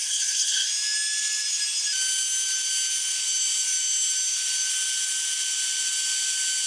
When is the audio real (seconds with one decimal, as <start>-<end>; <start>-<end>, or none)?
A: 0.7-6.7

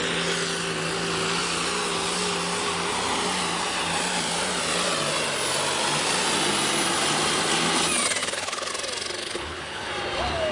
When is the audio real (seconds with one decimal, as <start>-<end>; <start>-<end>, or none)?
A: 0.0-8.2; 8.7-9.2; 9.9-10.5

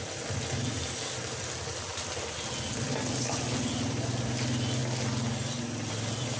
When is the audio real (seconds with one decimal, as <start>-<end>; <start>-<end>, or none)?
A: 0.0-6.4

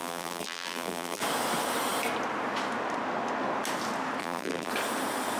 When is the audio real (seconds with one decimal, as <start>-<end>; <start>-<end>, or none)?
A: 1.2-4.2; 4.7-5.4

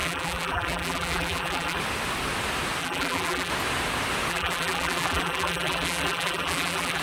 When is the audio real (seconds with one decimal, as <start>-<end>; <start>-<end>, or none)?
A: 1.8-2.8; 3.5-4.3

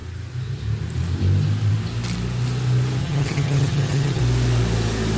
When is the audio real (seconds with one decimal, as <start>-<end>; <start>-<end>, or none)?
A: 0.0-3.0; 4.2-5.2